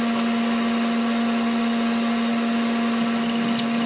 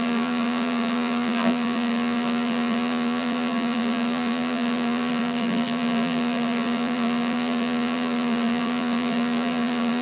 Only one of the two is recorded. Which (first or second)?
first